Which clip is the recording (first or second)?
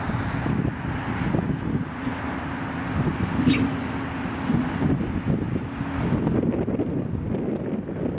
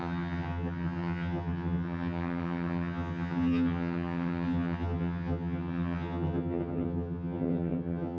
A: first